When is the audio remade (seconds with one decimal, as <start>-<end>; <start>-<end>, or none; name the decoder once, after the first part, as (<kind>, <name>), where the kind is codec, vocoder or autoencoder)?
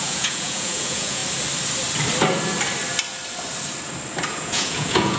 0.0-1.2 (vocoder, Vocos); 4.3-5.2